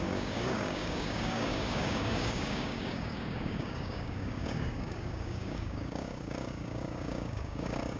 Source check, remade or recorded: remade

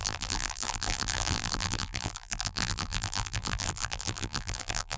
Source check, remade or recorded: remade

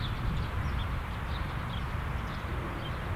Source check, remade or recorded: recorded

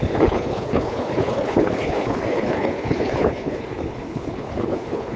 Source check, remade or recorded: remade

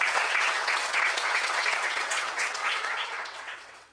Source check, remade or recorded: remade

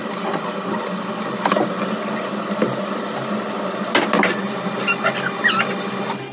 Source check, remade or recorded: recorded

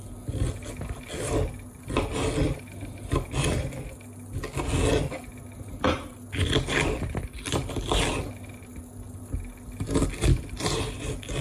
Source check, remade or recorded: recorded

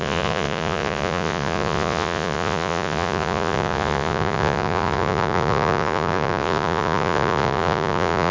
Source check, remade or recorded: remade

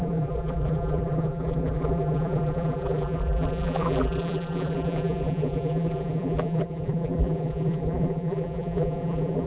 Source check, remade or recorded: remade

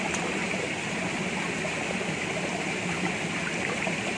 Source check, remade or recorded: recorded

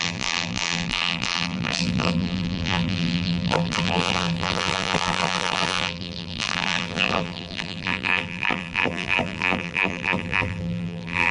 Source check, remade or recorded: remade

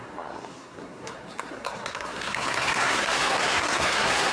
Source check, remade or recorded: remade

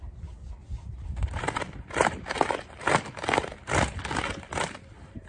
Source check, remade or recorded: recorded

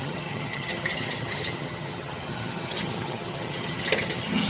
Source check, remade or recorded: remade